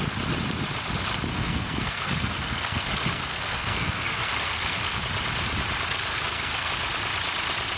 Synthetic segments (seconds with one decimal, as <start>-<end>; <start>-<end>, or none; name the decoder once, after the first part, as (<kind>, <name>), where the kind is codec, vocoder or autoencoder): 1.3-5.0 (codec, SNAC); 6.1-6.7